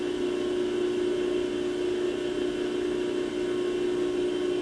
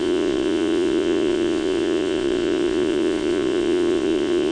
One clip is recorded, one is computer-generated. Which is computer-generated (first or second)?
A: second